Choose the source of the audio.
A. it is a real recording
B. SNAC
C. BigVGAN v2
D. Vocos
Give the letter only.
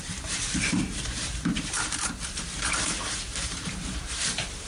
C